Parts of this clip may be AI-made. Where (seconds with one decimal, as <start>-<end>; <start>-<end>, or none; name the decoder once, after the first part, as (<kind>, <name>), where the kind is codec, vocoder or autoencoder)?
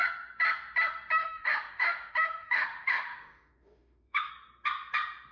1.2-4.3 (autoencoder, DAC-VAE)